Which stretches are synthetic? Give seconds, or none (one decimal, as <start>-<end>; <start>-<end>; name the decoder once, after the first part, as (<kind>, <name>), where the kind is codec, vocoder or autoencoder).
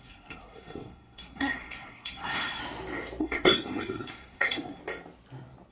0.0-2.6 (codec, SNAC); 3.2-4.8